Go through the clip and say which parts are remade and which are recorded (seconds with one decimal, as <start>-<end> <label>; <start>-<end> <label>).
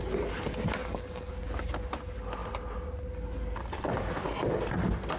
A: 0.0-0.8 recorded; 0.8-1.3 remade; 1.3-5.2 recorded